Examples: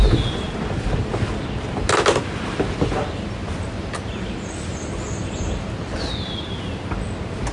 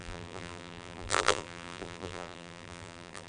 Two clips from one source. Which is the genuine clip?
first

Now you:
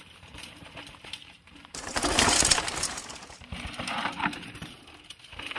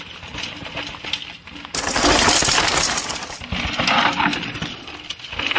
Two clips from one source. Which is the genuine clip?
second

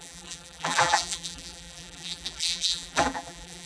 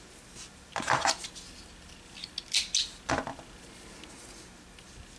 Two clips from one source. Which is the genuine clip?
second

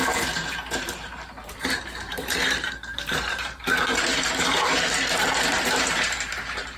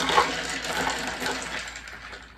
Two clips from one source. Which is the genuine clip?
second